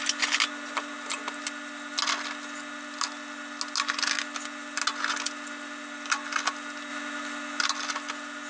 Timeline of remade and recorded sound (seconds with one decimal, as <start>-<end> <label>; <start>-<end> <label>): 0.0-8.5 recorded